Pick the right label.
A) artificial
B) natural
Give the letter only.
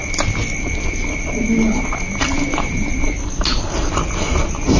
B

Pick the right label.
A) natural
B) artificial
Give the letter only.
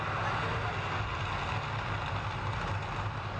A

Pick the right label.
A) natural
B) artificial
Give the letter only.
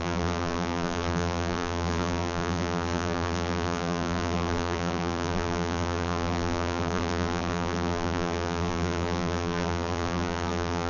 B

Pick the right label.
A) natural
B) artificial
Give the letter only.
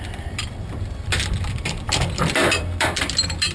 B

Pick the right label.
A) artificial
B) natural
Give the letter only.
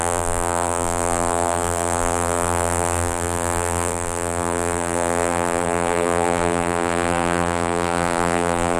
A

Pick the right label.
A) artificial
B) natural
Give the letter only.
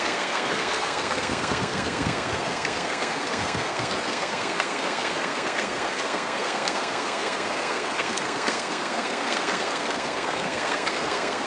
A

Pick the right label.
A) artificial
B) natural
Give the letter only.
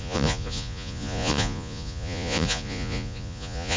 A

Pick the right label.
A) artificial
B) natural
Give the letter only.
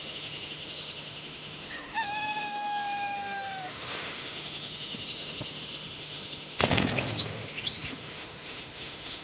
A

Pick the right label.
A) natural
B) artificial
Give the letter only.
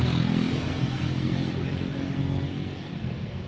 B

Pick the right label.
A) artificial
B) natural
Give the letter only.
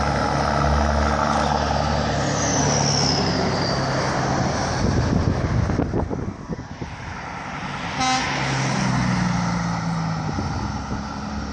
B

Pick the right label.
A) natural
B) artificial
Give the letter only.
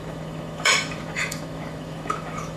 B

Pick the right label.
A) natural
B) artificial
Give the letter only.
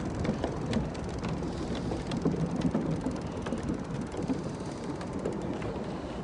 A